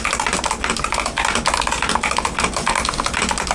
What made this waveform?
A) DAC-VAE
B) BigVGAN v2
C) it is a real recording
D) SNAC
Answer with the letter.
C